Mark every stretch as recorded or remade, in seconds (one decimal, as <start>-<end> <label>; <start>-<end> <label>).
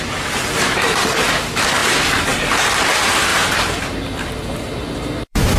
0.0-5.6 remade